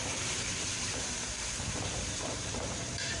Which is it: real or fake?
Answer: fake